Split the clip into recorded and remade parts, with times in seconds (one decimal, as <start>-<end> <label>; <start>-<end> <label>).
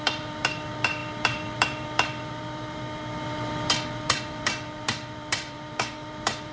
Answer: 0.0-6.5 remade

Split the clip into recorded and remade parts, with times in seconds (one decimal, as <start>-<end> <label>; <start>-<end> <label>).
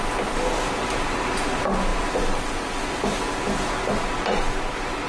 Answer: 0.0-5.1 recorded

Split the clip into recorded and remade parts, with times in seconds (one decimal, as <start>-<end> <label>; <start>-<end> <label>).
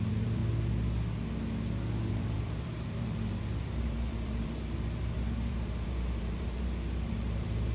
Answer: 0.0-0.4 remade; 0.4-2.1 recorded; 2.1-7.7 remade